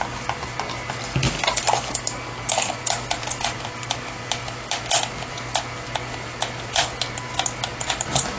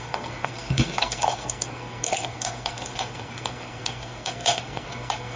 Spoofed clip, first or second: second